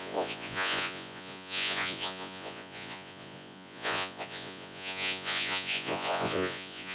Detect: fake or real fake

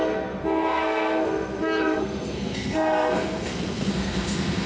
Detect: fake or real fake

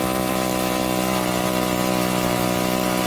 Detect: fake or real real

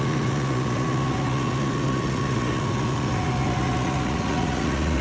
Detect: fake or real fake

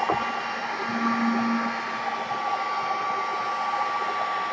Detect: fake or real real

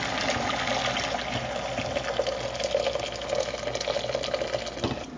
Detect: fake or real real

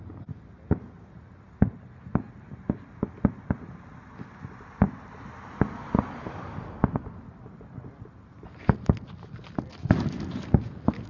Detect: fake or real real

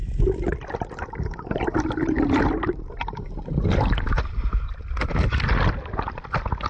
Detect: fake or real real